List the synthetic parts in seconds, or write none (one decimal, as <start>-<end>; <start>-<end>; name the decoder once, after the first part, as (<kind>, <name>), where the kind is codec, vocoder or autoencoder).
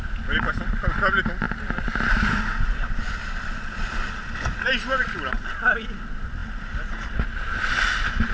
none